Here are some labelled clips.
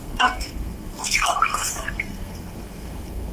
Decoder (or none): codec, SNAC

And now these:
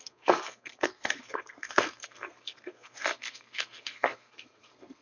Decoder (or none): codec, SNAC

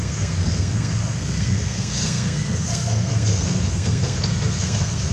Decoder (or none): codec, SNAC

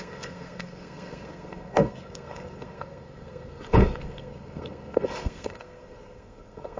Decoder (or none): codec, SNAC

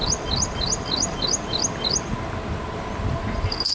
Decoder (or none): none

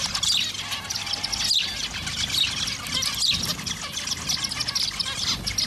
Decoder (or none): none